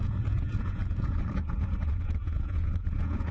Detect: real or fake fake